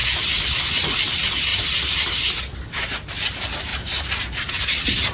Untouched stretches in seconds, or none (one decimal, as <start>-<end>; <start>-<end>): 0.0-1.5; 2.8-3.7; 4.6-5.1

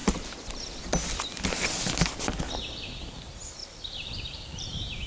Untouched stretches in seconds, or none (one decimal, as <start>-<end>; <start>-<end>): 0.0-3.6

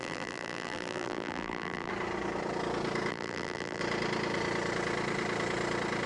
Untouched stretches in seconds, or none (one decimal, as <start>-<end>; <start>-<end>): 1.9-3.1; 3.8-6.1

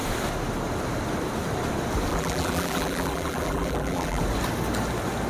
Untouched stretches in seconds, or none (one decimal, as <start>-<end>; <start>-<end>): 0.0-2.1; 4.2-5.3